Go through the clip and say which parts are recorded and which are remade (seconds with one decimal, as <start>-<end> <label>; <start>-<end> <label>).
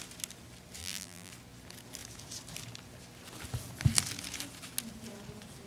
0.0-0.8 recorded; 0.8-1.3 remade; 1.3-5.7 recorded